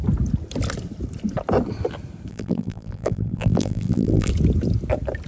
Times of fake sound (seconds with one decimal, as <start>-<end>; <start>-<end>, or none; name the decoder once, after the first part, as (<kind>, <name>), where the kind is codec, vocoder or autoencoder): 2.3-4.3 (vocoder, BigVGAN v2)